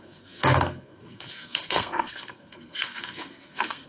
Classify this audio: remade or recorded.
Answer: remade